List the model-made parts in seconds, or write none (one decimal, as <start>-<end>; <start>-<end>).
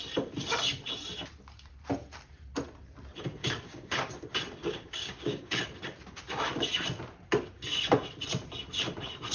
3.4-4.1; 4.6-5.6